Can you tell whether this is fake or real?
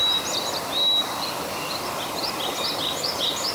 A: real